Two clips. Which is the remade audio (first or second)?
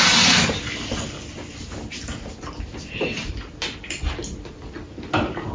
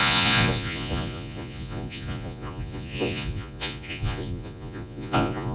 second